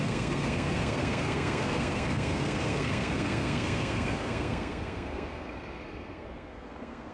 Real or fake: fake